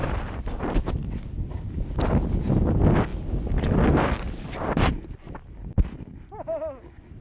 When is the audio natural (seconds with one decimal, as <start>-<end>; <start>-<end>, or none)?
2.1-3.1; 5.3-7.2